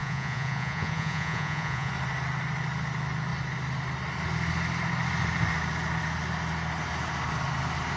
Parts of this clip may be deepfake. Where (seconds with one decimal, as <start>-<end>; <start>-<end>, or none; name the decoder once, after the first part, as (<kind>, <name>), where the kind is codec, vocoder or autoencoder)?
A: 0.0-1.9 (vocoder, Vocos)